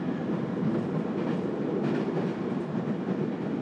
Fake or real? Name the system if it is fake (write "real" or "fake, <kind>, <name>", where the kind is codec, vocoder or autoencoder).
real